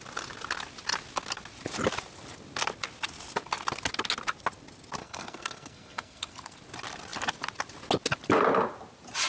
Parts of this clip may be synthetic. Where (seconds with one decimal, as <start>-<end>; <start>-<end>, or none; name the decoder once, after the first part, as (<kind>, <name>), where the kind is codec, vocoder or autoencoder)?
5.0-6.6 (codec, SNAC)